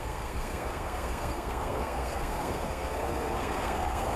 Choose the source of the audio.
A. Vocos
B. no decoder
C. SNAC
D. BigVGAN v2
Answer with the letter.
C